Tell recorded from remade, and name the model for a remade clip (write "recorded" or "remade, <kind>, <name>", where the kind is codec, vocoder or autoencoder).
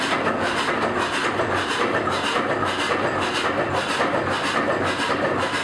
recorded